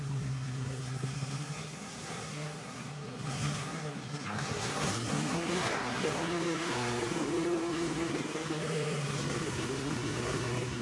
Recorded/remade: remade